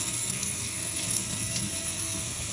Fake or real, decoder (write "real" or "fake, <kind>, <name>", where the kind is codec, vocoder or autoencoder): fake, codec, SNAC